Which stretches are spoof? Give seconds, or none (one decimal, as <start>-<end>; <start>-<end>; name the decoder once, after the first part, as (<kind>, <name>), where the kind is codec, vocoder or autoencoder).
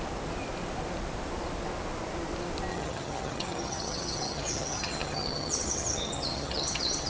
2.7-7.1 (vocoder, HiFi-GAN)